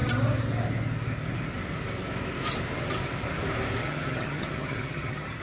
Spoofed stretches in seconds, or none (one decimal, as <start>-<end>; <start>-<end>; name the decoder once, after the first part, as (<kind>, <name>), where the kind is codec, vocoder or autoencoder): 3.8-5.4 (vocoder, HiFi-GAN)